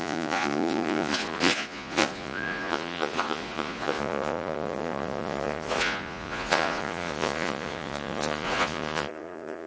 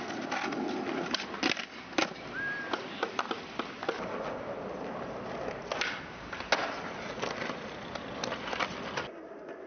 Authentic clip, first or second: second